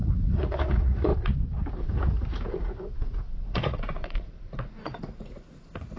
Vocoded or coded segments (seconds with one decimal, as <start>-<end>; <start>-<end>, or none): 0.0-1.1; 1.8-6.0